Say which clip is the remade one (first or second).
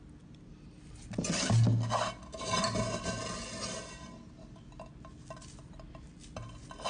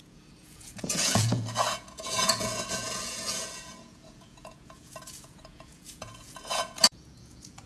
second